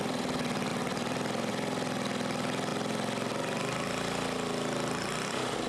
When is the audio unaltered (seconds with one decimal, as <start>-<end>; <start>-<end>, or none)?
0.0-5.7